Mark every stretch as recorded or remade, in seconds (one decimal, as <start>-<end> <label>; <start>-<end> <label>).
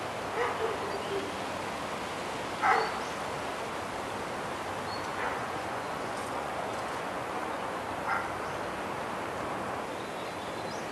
0.0-5.1 recorded; 5.1-7.8 remade; 7.8-10.9 recorded